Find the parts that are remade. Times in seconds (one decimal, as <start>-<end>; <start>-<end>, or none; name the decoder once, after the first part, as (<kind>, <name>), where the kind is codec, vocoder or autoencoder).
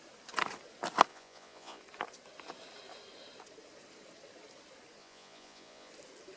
1.1-1.8 (vocoder, Vocos); 5.0-5.9